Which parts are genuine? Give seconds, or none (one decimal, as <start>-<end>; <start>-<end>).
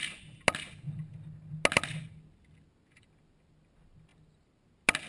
0.0-5.1